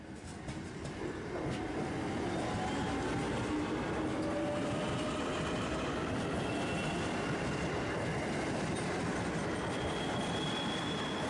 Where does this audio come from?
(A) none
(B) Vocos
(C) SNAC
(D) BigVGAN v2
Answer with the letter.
A